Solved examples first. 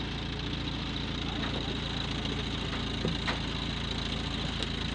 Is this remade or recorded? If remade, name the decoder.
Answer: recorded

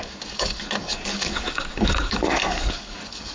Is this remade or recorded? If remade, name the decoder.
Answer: remade, codec, DAC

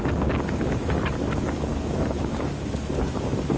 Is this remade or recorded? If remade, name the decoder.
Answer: remade, codec, DAC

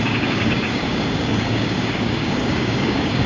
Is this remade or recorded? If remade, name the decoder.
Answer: remade, codec, DAC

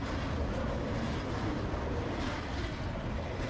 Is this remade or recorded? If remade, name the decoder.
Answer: recorded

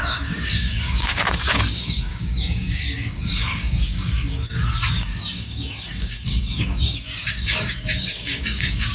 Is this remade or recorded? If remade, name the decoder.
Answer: remade, codec, DAC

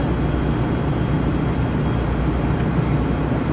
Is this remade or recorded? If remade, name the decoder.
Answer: recorded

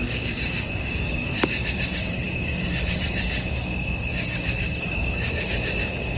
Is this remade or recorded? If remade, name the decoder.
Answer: remade, codec, DAC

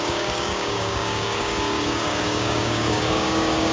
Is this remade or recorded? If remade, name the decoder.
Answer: remade, codec, DAC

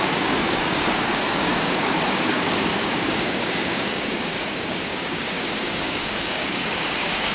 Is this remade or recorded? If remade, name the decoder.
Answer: remade, codec, DAC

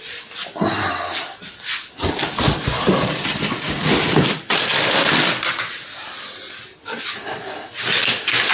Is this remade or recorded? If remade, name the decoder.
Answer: recorded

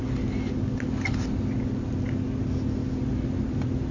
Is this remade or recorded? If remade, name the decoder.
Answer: recorded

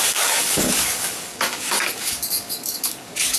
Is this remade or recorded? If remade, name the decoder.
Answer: remade, codec, DAC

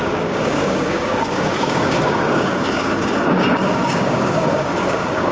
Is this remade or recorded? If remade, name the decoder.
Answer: remade, codec, DAC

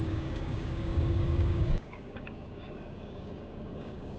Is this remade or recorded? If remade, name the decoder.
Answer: remade, codec, DAC